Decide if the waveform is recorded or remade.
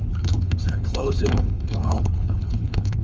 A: remade